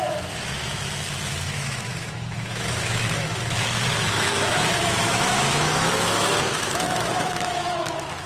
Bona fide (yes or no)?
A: no